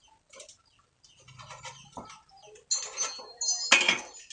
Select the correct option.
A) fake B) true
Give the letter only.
B